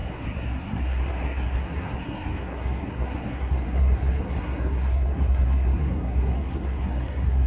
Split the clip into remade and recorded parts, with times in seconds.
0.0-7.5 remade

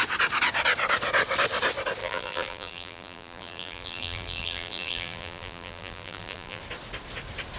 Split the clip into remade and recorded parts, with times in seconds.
0.0-2.0 recorded; 2.0-6.6 remade; 6.6-7.6 recorded